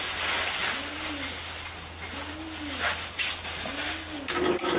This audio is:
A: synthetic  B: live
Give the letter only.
B